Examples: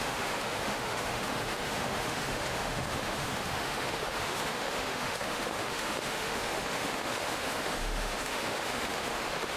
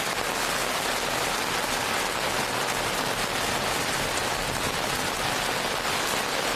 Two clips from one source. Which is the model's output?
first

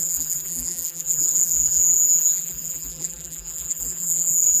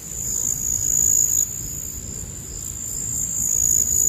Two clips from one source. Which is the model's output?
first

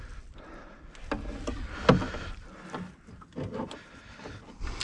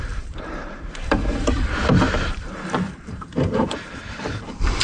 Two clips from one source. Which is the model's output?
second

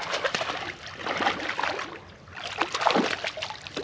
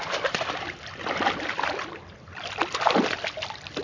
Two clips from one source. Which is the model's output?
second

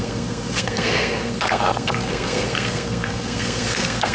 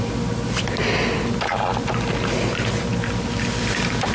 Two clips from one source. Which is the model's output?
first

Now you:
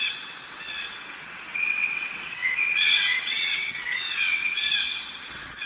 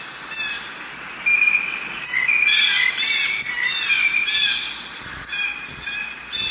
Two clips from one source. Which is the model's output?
first